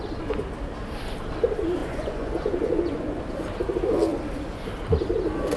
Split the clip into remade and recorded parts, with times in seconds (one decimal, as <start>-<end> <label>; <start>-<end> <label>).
0.0-1.8 recorded; 1.8-3.2 remade; 3.2-5.6 recorded